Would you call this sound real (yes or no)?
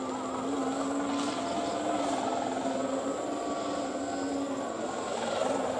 yes